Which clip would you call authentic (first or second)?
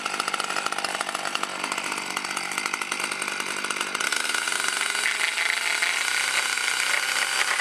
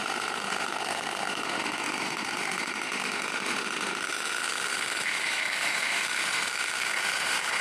first